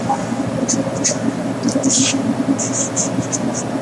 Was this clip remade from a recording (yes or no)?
no